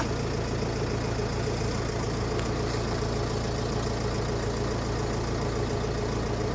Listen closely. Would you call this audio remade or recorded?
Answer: recorded